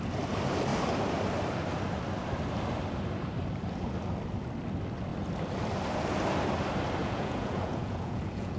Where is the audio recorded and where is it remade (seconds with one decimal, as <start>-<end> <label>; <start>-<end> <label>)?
0.0-7.0 recorded; 7.0-8.6 remade